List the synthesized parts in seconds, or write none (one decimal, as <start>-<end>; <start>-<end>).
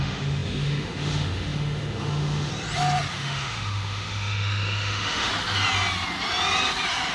0.0-2.5; 3.1-5.3